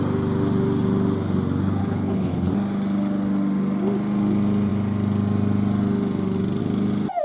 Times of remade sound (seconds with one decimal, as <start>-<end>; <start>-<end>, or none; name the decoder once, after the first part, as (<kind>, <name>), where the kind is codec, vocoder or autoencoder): 1.8-2.5 (codec, HILCodec)